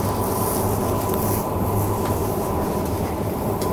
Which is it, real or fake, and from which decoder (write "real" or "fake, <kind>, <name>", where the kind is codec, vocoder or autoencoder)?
real